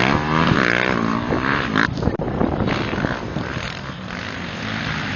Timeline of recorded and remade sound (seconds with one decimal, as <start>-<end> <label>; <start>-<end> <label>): 0.0-5.2 recorded